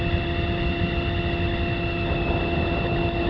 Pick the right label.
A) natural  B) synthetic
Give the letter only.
A